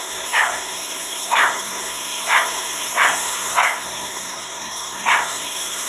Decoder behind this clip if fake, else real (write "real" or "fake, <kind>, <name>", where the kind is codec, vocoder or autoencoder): fake, codec, SNAC